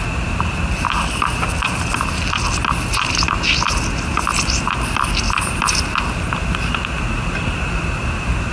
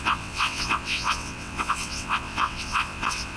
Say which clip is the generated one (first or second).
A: second